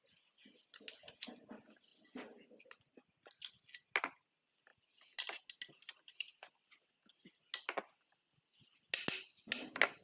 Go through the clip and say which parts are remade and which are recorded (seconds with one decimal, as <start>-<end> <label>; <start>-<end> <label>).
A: 0.0-10.0 recorded